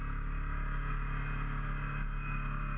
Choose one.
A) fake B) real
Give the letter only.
B